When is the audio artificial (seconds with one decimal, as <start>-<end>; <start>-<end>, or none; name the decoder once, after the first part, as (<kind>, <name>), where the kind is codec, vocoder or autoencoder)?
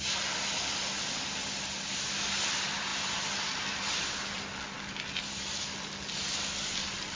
none